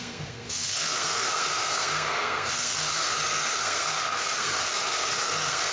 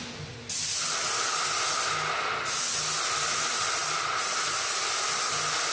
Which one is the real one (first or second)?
second